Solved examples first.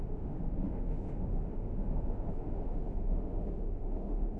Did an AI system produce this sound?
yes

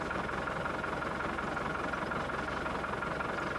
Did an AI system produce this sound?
no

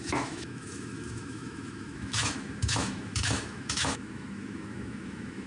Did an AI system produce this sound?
yes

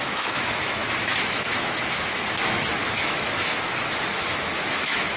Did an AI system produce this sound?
yes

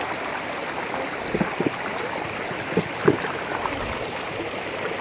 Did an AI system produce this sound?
no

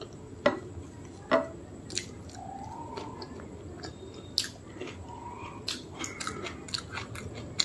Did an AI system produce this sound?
no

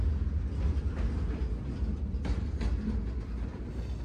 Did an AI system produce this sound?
no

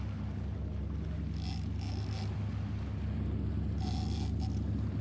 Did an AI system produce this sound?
no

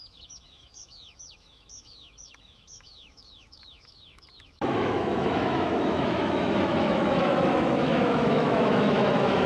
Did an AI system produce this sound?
yes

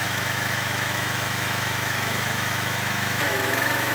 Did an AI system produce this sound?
yes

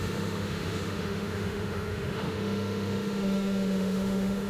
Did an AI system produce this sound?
yes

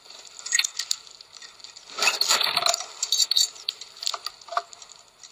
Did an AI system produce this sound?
no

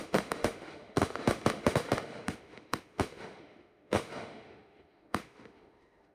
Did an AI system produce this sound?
yes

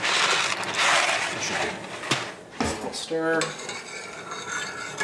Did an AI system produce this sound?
no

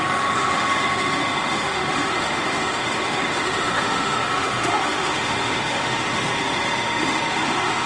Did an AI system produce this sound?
yes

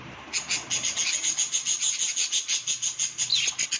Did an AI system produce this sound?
no